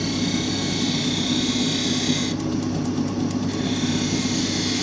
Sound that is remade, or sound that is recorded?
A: recorded